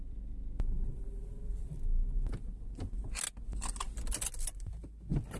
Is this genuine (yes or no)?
yes